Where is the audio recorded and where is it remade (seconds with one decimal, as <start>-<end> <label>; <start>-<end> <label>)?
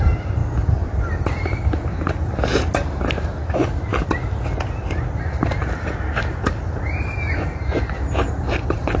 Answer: 0.0-9.0 recorded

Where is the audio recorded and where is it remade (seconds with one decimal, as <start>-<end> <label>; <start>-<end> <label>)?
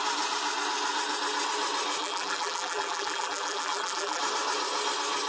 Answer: 0.0-2.0 recorded; 2.0-4.2 remade; 4.2-5.3 recorded